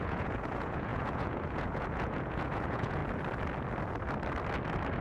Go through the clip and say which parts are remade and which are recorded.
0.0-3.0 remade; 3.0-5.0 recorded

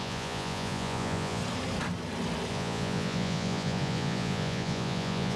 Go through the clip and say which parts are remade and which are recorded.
0.0-1.4 remade; 1.4-2.5 recorded; 2.5-5.4 remade